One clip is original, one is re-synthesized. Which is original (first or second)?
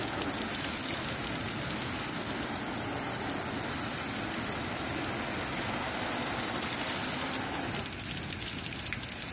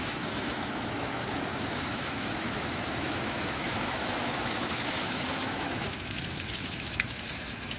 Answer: first